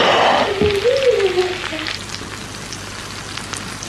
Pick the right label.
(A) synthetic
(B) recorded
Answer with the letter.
B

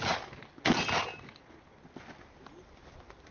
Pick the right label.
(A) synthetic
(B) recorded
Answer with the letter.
B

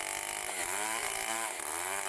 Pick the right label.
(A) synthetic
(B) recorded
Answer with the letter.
B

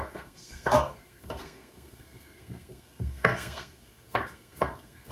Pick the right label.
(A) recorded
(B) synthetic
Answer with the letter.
B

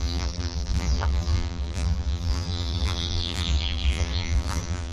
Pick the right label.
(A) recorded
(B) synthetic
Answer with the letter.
B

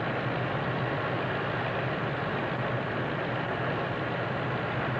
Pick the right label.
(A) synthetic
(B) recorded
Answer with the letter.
B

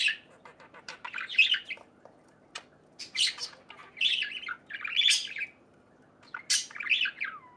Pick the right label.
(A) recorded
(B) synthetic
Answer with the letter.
A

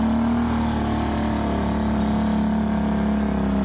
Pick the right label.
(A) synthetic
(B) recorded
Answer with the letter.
B